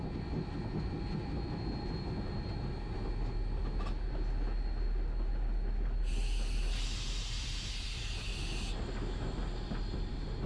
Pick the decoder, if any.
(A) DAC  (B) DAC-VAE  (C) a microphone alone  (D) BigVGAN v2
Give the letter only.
C